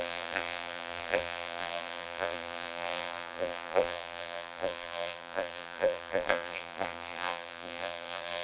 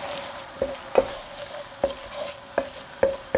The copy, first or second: first